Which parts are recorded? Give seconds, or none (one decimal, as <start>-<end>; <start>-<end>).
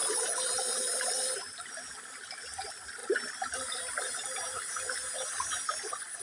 0.0-1.0; 3.0-6.2